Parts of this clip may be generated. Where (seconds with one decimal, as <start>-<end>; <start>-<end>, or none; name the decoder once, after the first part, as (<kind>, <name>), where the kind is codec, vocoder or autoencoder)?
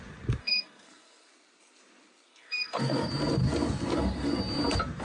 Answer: 0.4-1.3 (codec, SNAC); 2.3-3.1; 3.9-4.4